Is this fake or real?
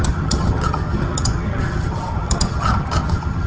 fake